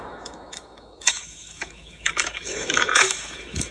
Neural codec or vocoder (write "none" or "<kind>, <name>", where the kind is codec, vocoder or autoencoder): autoencoder, DAC-VAE